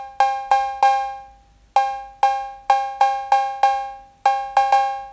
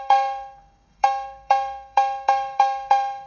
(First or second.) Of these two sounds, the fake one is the second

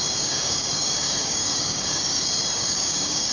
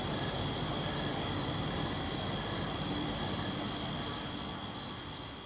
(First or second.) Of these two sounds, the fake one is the first